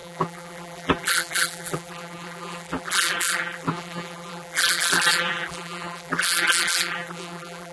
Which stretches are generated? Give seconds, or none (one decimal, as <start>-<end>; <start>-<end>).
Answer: 0.0-7.7